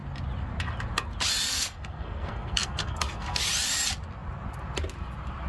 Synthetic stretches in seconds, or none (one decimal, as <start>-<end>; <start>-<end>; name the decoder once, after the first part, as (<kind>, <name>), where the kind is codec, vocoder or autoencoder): 1.5-3.4 (codec, SNAC)